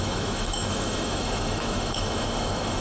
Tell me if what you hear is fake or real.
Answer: fake